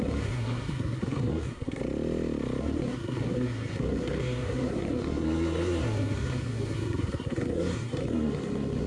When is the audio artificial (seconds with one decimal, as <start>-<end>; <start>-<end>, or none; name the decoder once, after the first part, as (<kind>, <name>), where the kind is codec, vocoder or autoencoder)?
0.0-1.8 (codec, SNAC); 2.6-8.9